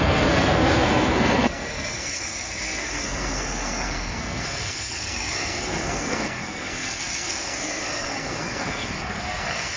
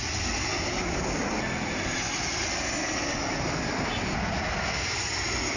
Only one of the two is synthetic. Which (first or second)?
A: first